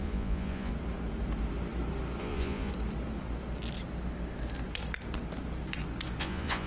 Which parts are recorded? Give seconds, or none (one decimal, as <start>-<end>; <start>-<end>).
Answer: 0.7-2.2; 2.7-6.2